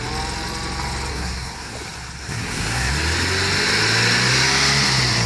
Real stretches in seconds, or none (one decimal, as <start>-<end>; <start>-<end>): 0.0-1.1; 1.7-2.2; 2.9-5.3